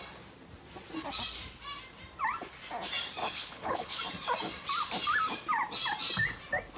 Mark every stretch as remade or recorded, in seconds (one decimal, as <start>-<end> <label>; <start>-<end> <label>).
0.0-3.2 recorded; 3.2-4.0 remade; 4.0-6.8 recorded